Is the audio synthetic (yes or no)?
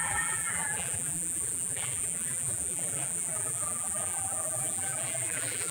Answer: yes